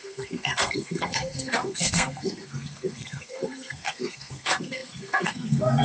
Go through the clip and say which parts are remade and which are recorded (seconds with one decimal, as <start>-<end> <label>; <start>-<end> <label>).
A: 0.0-5.8 remade